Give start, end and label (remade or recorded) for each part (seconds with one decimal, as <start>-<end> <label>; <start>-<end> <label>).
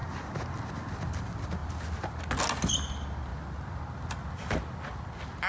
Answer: 0.0-5.5 recorded